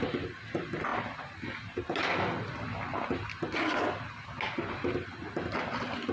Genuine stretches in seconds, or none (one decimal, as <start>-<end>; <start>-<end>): 0.0-6.1